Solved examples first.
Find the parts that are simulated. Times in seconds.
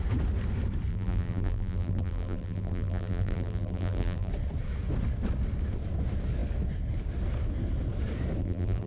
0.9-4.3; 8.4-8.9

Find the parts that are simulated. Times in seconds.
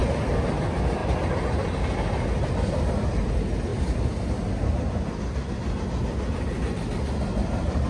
0.0-0.6; 1.0-1.8